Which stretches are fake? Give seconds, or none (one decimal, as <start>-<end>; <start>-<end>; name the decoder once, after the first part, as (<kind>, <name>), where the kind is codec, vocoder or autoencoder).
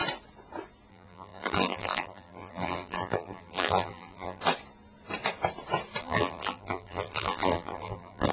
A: 0.9-4.4 (vocoder, BigVGAN v2); 6.0-8.3